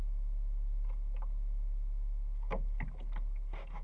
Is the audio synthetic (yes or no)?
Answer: no